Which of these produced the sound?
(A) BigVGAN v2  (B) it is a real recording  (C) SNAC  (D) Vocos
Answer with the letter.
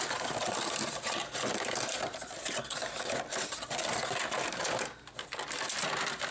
B